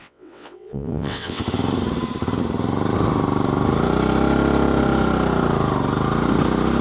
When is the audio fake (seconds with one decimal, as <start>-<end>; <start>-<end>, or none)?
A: 0.0-1.4